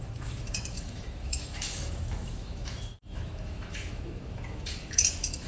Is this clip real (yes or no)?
no